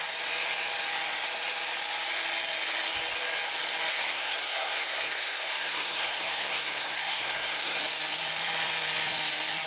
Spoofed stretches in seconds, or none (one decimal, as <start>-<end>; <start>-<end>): 3.9-7.8